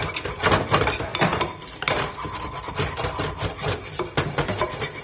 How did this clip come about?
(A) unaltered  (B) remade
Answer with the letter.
A